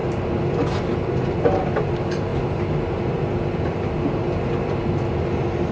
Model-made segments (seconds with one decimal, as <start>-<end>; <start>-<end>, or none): none

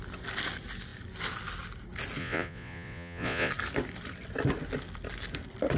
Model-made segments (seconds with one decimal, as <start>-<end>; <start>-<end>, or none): 2.2-3.5

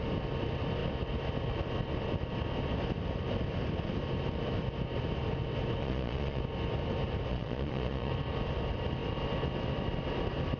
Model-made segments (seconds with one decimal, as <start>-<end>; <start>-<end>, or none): 5.8-6.4; 7.3-8.1

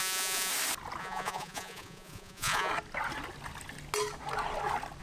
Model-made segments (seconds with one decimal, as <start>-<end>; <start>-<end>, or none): 0.0-0.5; 1.0-2.7

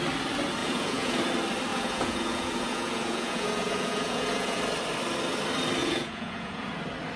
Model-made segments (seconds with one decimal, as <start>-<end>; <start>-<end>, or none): 0.6-1.2; 1.7-4.6; 5.8-6.7

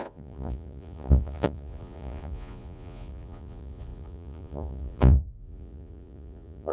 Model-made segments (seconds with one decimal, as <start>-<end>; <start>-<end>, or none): 0.0-6.7